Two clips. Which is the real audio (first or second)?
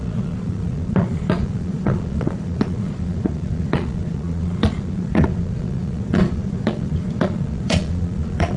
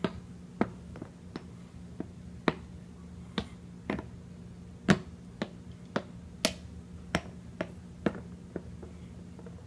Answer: second